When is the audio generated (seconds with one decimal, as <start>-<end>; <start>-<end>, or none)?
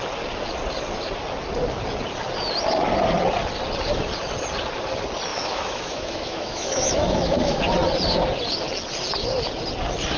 5.3-7.6